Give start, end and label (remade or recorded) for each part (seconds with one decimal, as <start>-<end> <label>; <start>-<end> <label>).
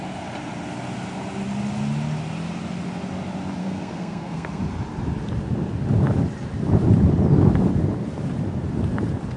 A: 0.0-3.6 recorded; 3.6-4.6 remade; 4.6-9.4 recorded